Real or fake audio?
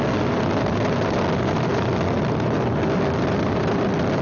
real